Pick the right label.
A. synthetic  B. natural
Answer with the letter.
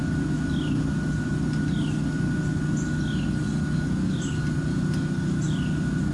B